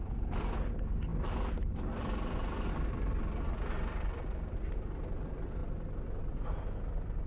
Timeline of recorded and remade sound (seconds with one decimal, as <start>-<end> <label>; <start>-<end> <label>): 0.0-1.1 recorded; 1.1-2.7 remade; 2.7-7.3 recorded